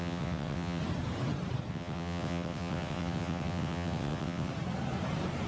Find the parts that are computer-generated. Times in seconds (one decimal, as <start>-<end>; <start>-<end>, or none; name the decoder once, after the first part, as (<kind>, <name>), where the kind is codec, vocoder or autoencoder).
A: 0.0-0.8 (vocoder, WaveNeXt); 1.7-4.5

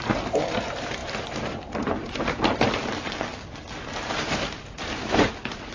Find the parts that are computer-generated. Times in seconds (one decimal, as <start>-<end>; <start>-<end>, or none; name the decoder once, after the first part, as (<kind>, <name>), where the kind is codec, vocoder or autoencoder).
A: 0.0-2.8 (vocoder, BigVGAN v2); 4.0-5.7

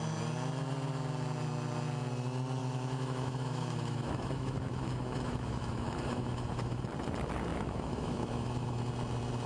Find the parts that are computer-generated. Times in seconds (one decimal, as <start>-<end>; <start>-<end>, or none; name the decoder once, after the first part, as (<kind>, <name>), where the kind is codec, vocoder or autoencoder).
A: 2.6-6.8 (autoencoder, DAC-VAE); 7.5-8.8